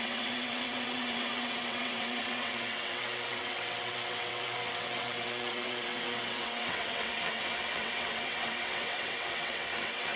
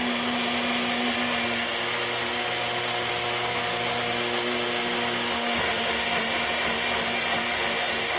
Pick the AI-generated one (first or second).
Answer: first